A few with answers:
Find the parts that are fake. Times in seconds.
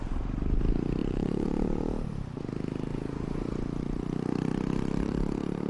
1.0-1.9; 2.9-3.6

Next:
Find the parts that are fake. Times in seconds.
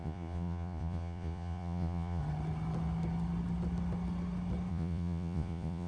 0.0-2.2; 4.7-5.9